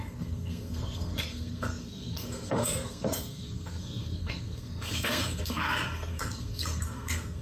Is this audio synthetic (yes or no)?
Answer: yes